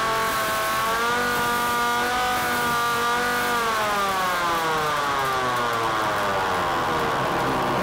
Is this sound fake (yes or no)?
no